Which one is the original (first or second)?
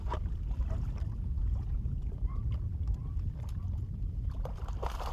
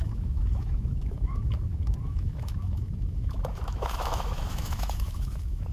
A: first